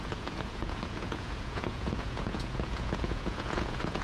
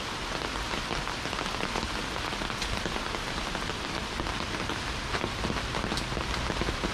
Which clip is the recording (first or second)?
second